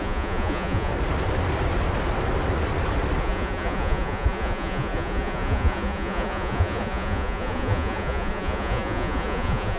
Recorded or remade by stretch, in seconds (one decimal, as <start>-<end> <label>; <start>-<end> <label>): 0.0-0.9 remade; 0.9-3.2 recorded; 3.2-9.8 remade